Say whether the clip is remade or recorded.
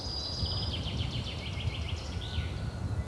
recorded